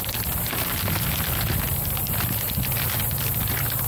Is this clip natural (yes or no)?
yes